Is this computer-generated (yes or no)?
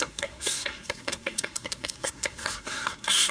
yes